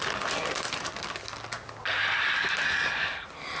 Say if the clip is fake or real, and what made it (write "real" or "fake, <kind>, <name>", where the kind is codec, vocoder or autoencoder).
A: real